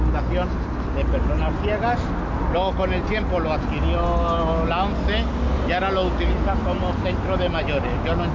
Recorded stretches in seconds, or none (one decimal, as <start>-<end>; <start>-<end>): 0.0-8.3